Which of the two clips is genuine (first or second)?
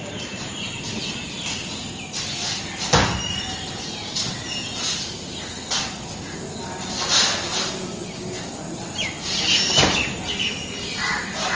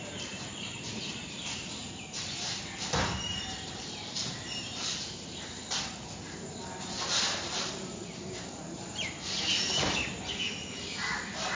first